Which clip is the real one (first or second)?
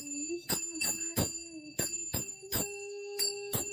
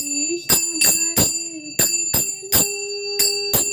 second